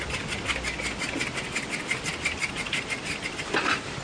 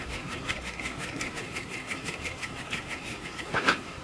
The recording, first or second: first